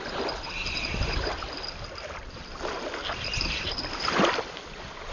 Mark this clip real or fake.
real